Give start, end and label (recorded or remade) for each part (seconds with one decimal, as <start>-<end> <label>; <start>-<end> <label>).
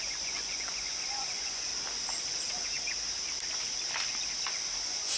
0.0-1.7 remade; 1.7-4.8 recorded; 4.8-5.2 remade